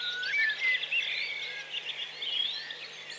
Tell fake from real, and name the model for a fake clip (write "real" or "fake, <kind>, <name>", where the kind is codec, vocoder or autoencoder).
real